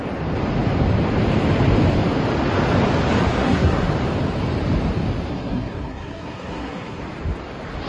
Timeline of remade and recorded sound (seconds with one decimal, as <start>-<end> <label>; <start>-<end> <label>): 0.0-3.4 recorded; 3.4-3.9 remade; 3.9-5.3 recorded; 5.3-7.0 remade; 7.0-7.9 recorded